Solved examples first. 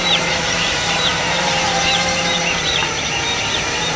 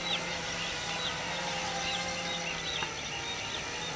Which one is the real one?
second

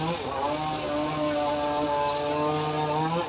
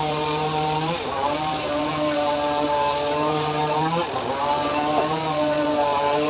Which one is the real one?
first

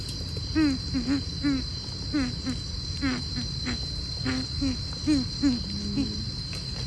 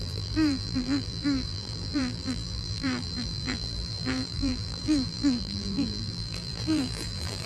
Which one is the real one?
first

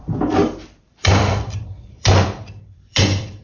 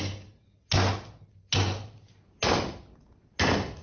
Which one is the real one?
second